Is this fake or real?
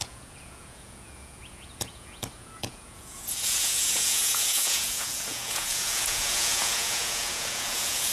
fake